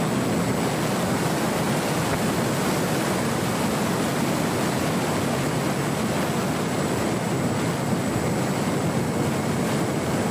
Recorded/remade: recorded